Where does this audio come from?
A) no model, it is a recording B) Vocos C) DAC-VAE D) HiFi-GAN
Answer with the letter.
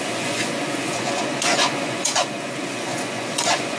B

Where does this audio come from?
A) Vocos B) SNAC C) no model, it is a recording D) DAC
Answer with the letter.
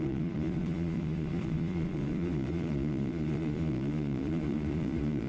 A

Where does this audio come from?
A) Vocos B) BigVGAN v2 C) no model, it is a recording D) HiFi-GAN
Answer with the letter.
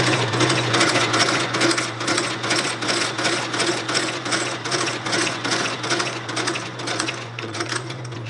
A